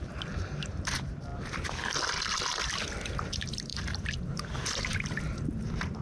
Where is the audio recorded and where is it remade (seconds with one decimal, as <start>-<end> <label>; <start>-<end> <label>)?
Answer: 0.0-1.3 remade; 1.3-3.1 recorded; 3.1-6.0 remade